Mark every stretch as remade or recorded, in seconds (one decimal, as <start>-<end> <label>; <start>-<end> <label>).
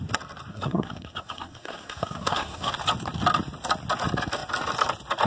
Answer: 0.0-0.5 recorded; 0.5-2.7 remade; 2.7-5.3 recorded